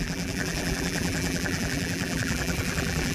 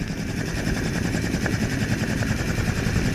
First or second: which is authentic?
second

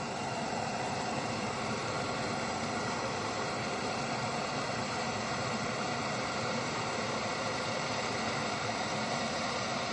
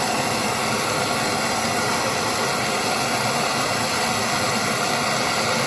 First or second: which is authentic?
second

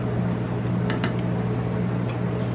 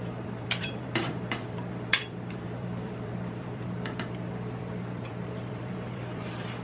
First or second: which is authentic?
first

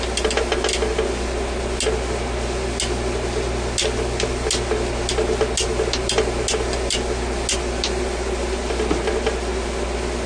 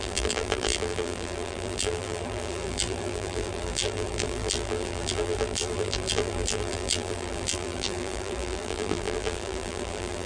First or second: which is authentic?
first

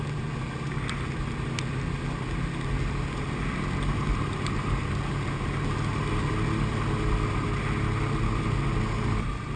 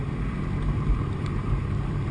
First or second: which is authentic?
first